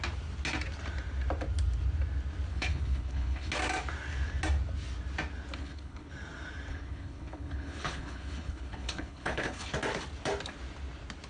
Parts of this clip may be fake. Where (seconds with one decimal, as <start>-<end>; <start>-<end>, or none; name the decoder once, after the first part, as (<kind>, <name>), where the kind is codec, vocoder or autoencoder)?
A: 2.5-3.5 (codec, HILCodec); 5.6-6.1; 6.7-9.7